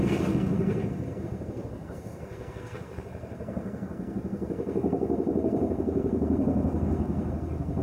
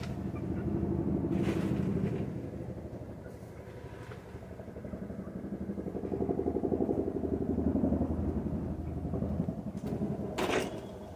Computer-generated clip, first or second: first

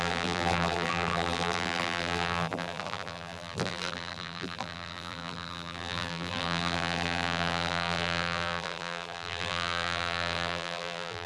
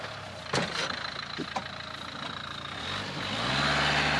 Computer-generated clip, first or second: first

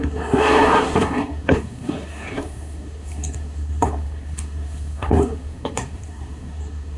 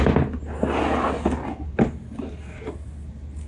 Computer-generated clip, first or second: first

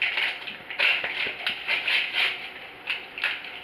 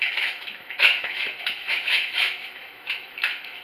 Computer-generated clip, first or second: second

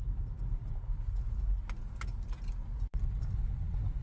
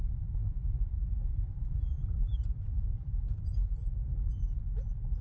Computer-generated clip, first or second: second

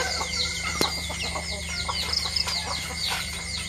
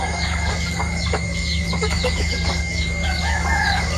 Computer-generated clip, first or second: second